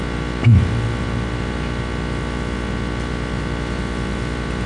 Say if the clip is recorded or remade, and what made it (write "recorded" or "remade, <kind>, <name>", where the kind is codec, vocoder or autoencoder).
recorded